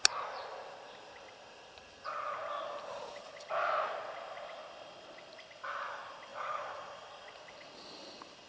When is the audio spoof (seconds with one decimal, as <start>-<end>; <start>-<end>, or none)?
6.3-7.1